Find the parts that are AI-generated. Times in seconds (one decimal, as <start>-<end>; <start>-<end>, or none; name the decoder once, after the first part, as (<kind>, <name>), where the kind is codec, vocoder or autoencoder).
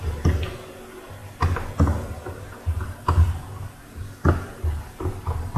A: none